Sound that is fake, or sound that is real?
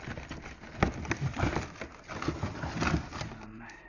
real